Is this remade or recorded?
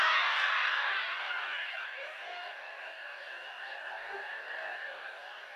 remade